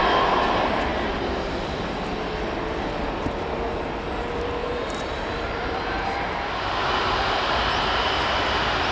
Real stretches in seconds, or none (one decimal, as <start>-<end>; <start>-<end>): 0.0-0.9; 2.3-4.6; 7.9-8.9